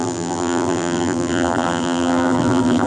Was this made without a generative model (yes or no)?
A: no